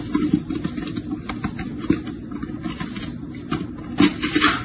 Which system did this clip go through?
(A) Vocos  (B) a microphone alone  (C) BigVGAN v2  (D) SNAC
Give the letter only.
B